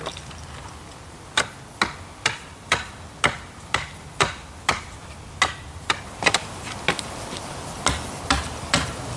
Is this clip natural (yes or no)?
yes